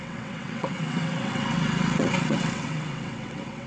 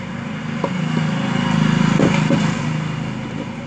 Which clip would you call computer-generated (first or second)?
first